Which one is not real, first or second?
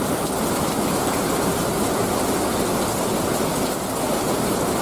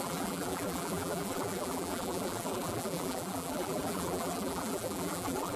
second